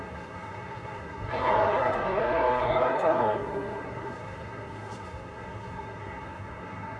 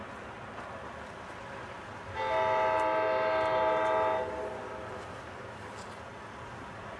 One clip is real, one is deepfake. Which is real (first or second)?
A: second